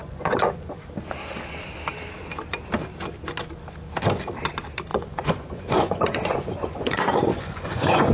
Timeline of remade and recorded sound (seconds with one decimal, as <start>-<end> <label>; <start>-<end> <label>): 0.0-0.8 remade; 0.8-4.9 recorded; 4.9-8.1 remade